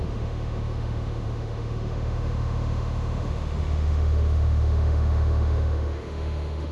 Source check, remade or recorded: remade